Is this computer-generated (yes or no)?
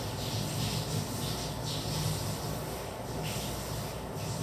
no